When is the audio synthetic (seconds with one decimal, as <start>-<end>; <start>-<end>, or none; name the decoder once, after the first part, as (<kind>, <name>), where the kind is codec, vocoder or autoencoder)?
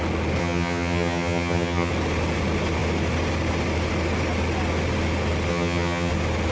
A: 0.4-1.9 (vocoder, HiFi-GAN); 5.5-6.1